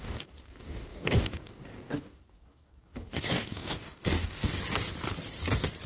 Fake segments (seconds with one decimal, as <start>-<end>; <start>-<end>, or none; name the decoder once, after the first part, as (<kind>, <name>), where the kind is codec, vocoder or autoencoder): 0.0-4.5 (codec, DAC)